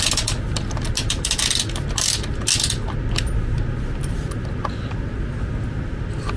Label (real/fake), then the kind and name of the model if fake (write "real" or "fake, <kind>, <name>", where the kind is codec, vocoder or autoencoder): real